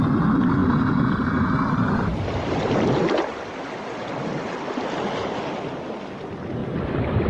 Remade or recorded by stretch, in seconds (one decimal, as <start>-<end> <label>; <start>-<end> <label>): 0.0-1.8 recorded; 1.8-2.7 remade; 2.7-6.6 recorded; 6.6-7.3 remade